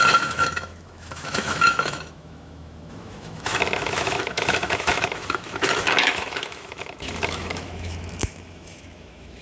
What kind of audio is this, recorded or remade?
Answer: remade